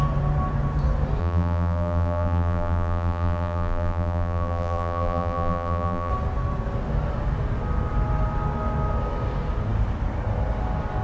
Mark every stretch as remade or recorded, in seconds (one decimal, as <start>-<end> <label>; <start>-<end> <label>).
0.0-1.2 recorded; 1.2-6.1 remade; 6.1-11.0 recorded